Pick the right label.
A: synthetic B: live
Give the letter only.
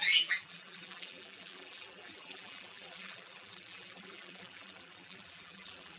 A